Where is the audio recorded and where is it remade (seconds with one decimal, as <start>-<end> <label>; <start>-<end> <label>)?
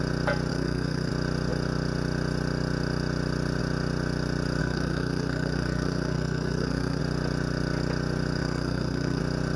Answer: 0.0-0.5 recorded; 0.5-1.1 remade; 1.1-4.6 recorded; 4.6-7.0 remade; 7.0-8.4 recorded; 8.4-9.2 remade; 9.2-9.6 recorded